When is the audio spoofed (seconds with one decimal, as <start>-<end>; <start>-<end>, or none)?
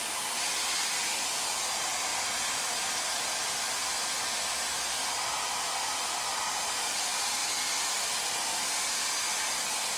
none